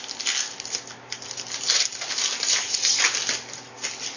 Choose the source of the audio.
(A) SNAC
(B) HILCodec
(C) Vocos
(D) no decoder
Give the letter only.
D